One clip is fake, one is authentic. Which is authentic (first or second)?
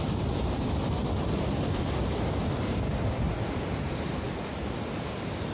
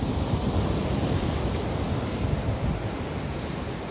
second